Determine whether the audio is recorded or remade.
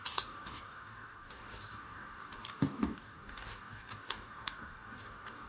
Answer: remade